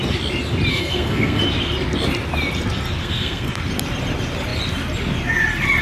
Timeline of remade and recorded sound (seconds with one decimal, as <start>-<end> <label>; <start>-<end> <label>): 0.0-0.7 recorded; 0.7-1.4 remade; 1.4-3.0 recorded; 3.0-3.6 remade; 3.6-5.8 recorded